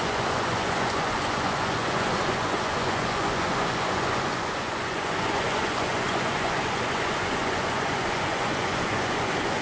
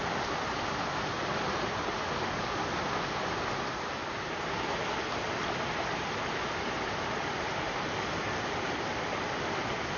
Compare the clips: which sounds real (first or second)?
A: second